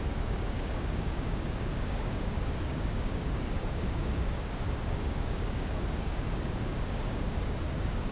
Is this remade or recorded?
remade